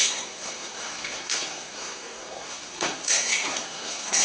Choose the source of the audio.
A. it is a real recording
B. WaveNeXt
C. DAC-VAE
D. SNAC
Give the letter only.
D